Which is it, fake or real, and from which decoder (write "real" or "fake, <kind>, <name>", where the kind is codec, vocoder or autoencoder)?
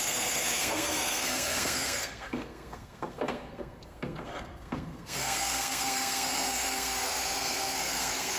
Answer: fake, codec, SNAC